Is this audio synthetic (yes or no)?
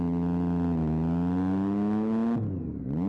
no